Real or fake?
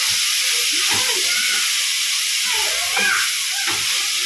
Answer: real